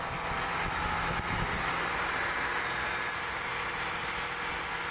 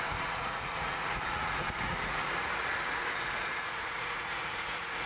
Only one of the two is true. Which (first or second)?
first